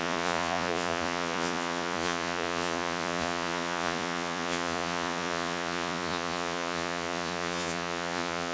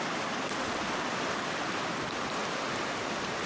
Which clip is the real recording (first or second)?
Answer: second